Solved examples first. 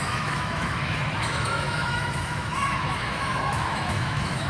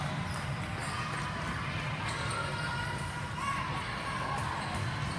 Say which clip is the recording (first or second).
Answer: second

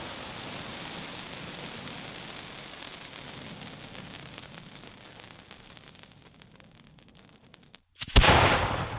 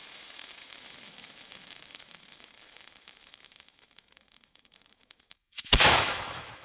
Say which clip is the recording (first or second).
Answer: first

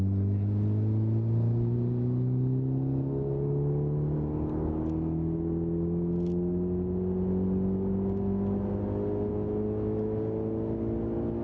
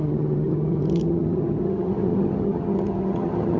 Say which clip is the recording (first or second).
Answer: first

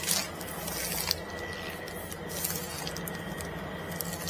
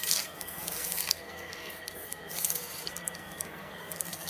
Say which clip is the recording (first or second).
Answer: first